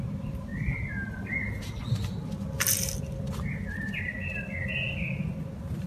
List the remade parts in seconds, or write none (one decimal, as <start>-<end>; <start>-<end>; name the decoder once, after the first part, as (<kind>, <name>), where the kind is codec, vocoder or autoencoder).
none